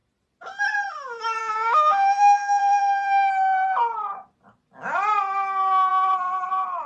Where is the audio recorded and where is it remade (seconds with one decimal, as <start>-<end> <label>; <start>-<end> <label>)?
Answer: 0.0-1.4 recorded; 1.4-3.3 remade; 3.3-6.9 recorded